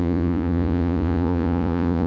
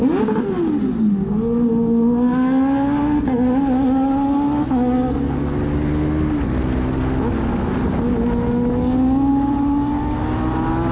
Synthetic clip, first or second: first